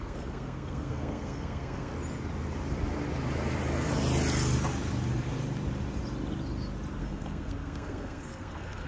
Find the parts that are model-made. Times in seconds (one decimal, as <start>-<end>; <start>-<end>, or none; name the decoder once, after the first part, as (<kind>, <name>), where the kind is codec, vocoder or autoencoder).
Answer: 0.0-1.9 (codec, SNAC); 7.0-8.9

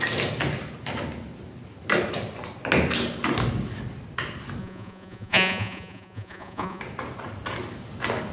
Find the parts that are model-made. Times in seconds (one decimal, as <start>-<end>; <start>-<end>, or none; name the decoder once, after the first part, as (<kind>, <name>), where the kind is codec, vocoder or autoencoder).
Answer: 4.6-6.8 (vocoder, Vocos)